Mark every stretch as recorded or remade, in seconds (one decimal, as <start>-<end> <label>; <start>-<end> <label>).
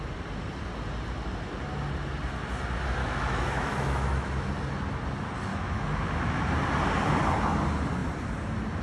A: 0.0-3.0 recorded; 3.0-4.5 remade; 4.5-5.5 recorded; 5.5-6.5 remade; 6.5-8.8 recorded